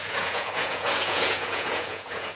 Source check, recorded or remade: remade